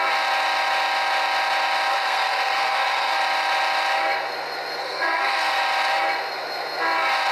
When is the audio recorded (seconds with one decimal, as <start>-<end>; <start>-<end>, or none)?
0.0-1.9; 3.2-4.8; 5.6-7.3